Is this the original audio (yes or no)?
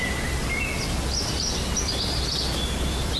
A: yes